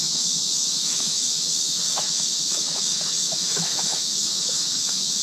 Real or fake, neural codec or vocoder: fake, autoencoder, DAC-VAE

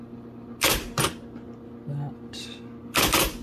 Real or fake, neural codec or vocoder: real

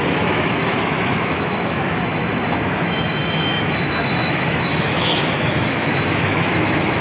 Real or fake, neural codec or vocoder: fake, autoencoder, DAC-VAE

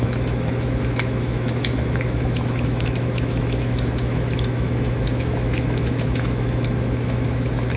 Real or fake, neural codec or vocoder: fake, autoencoder, DAC-VAE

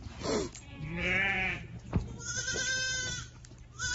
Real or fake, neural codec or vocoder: real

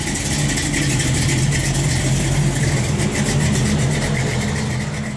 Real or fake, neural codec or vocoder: real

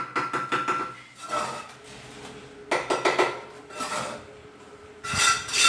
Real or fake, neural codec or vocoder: real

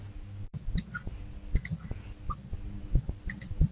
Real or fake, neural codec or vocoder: real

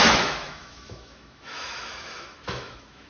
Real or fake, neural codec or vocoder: fake, autoencoder, DAC-VAE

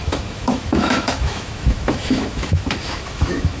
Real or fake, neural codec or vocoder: fake, autoencoder, DAC-VAE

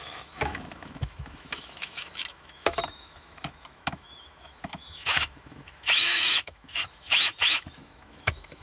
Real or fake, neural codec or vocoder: fake, autoencoder, DAC-VAE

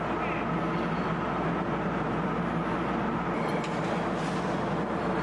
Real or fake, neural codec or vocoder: real